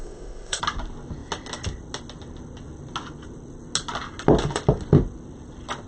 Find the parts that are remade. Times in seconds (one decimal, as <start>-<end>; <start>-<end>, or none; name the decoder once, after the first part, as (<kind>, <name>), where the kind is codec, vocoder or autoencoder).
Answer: 0.0-0.6 (codec, ZipCodec)